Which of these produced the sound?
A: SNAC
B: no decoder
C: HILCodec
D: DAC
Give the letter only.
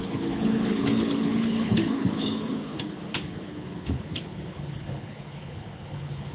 C